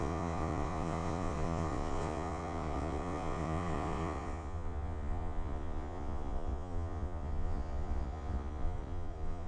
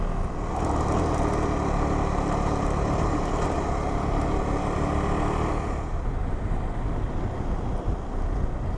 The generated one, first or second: first